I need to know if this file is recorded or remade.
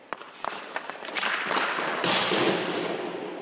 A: remade